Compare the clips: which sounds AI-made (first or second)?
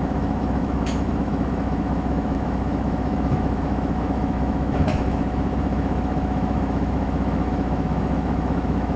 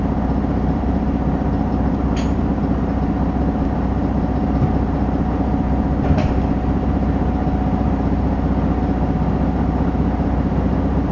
first